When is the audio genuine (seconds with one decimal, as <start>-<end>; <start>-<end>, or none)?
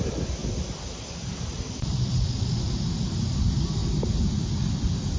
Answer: 0.0-5.2